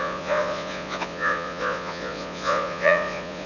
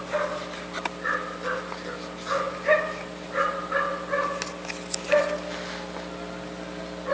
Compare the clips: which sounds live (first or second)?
second